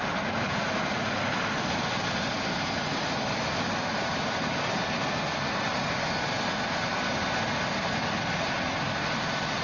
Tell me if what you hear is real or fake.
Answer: real